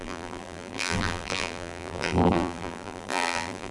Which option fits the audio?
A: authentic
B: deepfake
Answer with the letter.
B